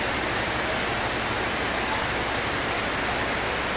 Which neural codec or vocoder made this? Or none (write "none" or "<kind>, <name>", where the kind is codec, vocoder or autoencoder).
none